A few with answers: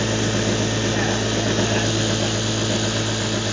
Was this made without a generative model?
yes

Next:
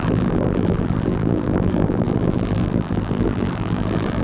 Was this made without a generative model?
no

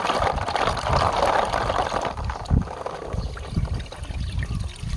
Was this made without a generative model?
yes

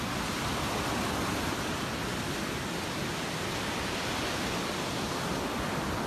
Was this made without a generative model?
yes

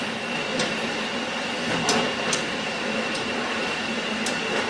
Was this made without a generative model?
no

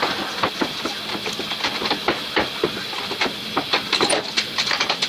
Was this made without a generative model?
yes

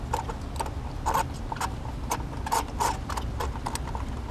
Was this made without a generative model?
yes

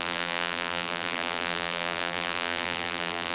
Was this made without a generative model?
no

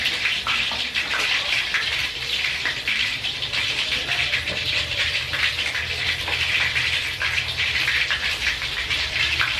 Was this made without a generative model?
no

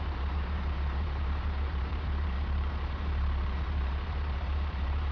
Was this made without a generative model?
no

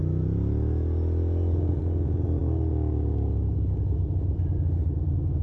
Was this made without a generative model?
yes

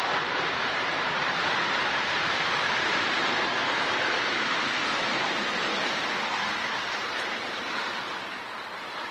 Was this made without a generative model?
no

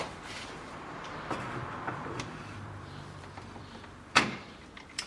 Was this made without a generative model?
no